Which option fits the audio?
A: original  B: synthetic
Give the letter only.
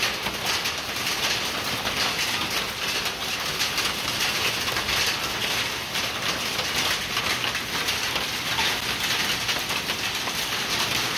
A